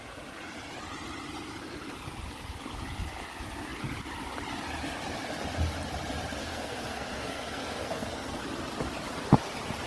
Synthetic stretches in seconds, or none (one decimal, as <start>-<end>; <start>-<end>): 6.4-8.4